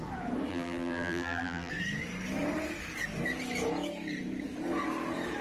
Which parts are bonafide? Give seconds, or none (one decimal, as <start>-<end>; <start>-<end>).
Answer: 0.0-0.5; 1.7-5.4